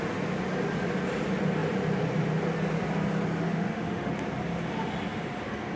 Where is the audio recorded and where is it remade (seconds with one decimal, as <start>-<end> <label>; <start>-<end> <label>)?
0.0-3.4 recorded; 3.4-4.1 remade; 4.1-5.8 recorded